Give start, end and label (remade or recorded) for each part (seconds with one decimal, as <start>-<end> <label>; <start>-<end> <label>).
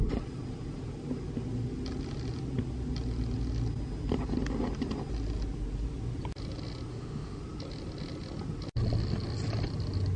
0.0-6.9 recorded; 6.9-7.4 remade; 7.4-10.2 recorded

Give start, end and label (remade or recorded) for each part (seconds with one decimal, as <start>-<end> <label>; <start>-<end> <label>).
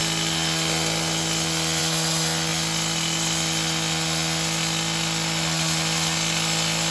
0.0-6.9 recorded